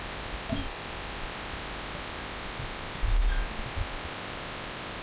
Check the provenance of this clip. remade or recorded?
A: recorded